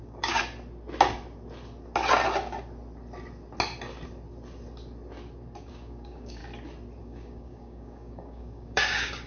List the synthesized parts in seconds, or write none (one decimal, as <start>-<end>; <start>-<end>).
0.0-0.4; 5.7-6.4; 7.0-9.3

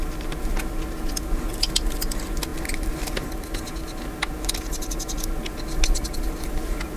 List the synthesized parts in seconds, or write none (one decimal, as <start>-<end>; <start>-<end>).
none

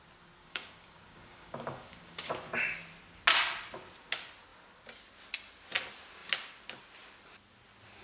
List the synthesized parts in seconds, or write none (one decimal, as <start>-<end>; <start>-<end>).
0.4-2.3

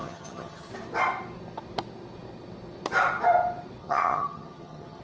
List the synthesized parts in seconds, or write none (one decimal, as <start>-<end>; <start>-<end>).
0.0-0.7; 3.8-5.0

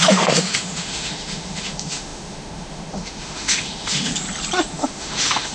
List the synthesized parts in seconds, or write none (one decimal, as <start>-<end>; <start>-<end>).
0.0-4.1; 4.7-5.5

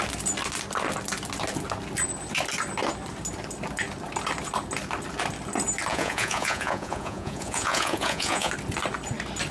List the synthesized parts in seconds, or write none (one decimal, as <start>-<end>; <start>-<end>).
5.9-8.5